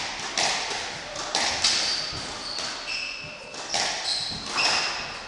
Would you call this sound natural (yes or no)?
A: yes